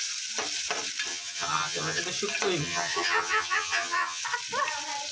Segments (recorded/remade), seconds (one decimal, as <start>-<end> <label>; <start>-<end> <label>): 0.0-1.1 recorded; 1.1-2.0 remade; 2.0-2.6 recorded; 2.6-4.2 remade; 4.2-5.1 recorded